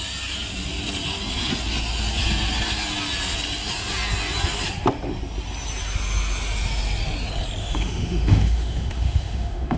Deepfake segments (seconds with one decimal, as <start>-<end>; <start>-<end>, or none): 7.6-9.8